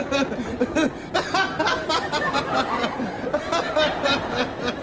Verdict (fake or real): real